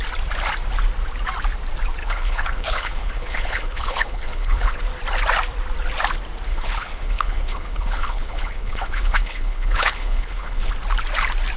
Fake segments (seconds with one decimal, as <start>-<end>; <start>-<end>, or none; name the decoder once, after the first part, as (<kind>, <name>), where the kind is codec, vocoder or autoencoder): 2.0-4.8 (codec, HILCodec); 6.5-10.7

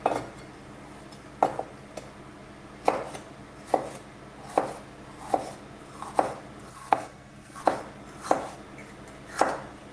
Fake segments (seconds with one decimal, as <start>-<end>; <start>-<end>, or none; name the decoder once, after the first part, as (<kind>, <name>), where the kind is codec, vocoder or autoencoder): 6.7-7.6 (codec, SNAC)

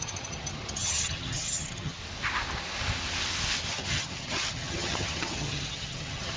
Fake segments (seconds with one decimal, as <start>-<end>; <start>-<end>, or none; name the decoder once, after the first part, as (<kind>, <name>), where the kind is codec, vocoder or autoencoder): 0.0-2.0 (vocoder, HiFi-GAN); 3.7-6.4

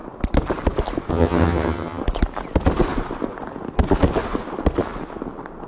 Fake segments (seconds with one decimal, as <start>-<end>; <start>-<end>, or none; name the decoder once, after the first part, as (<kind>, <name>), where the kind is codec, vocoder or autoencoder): 1.1-2.0 (vocoder, HiFi-GAN)

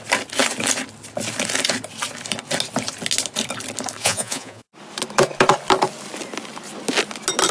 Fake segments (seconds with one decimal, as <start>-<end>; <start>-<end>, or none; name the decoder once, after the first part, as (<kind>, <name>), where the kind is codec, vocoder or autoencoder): 4.0-4.7 (vocoder, Vocos)